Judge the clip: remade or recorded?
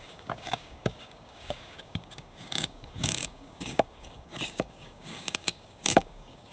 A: remade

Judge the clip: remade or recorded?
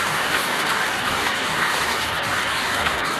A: remade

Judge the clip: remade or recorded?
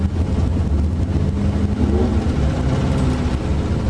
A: recorded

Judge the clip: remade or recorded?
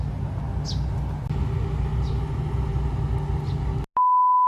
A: recorded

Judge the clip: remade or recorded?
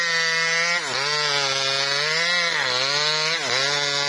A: recorded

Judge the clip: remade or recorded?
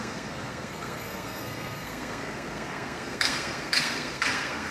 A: remade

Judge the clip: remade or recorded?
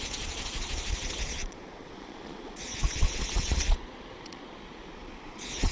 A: remade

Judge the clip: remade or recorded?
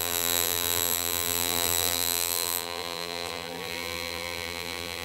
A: remade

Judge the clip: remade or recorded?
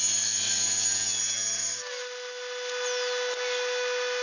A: recorded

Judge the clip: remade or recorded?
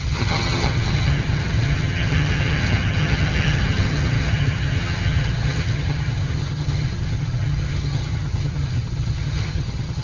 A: remade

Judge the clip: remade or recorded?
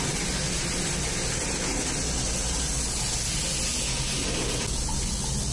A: recorded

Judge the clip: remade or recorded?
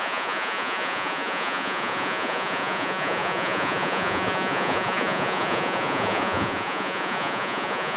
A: remade